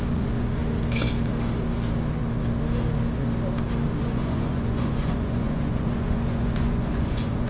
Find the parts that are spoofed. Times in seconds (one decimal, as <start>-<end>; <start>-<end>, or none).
0.0-0.6; 4.0-7.5